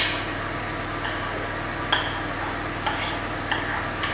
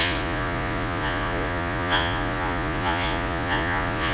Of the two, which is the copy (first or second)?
second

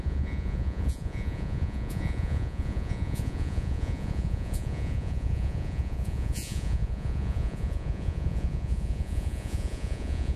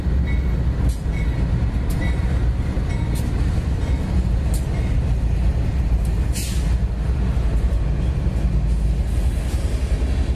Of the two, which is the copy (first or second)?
first